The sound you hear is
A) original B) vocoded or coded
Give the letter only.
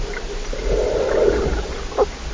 A